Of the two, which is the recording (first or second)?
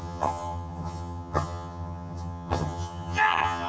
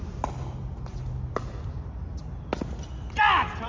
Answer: second